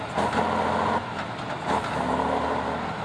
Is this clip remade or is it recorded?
recorded